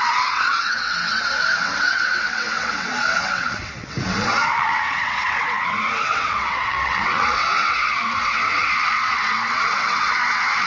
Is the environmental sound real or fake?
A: fake